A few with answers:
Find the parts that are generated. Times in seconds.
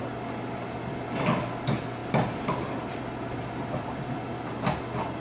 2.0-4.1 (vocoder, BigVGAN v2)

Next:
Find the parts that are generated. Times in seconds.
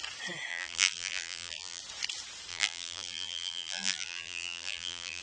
0.5-1.8 (vocoder, BigVGAN v2); 2.5-5.2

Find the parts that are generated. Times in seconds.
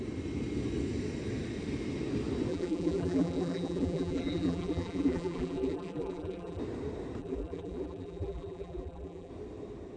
2.5-6.6 (vocoder, BigVGAN v2); 7.2-9.3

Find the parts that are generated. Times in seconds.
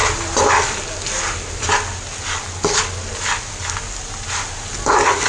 0.0-0.5 (vocoder, BigVGAN v2)